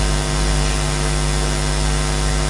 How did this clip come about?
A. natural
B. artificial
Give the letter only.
A